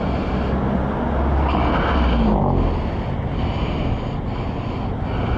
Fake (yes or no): no